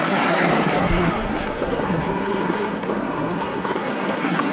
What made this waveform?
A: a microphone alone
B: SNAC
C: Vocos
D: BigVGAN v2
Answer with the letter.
B